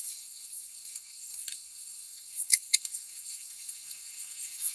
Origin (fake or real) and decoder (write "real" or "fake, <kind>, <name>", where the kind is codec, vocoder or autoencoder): fake, codec, SNAC